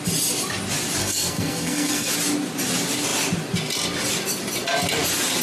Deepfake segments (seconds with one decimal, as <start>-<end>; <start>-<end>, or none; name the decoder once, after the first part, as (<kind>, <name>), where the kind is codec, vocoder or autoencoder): 1.0-2.1 (codec, SNAC)